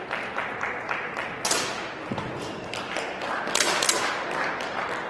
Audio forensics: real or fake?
fake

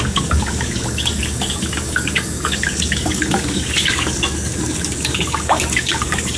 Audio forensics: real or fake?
fake